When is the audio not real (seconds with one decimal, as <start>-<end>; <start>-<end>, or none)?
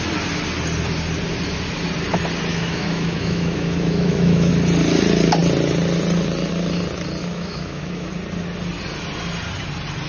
2.5-4.5; 7.2-8.1